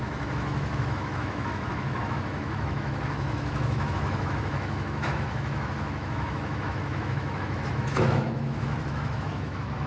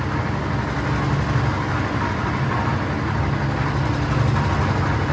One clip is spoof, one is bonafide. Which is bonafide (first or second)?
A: second